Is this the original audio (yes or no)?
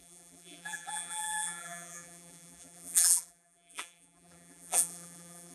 no